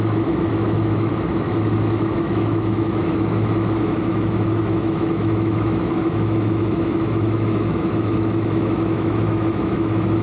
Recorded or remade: remade